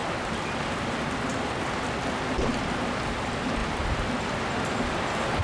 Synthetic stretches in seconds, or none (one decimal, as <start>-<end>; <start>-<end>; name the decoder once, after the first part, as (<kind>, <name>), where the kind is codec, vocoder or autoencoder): none